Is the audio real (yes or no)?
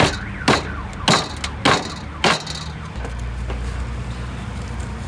yes